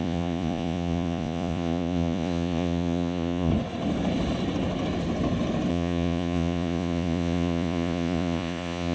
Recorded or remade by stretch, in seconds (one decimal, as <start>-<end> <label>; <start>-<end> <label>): 0.0-3.5 remade; 3.5-5.7 recorded; 5.7-8.9 remade